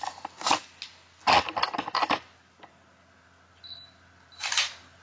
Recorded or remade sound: recorded